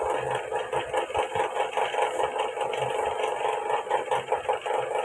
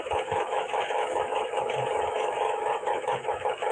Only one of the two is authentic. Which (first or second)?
first